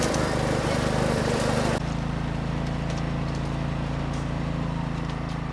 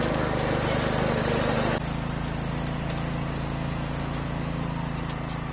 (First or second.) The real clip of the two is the second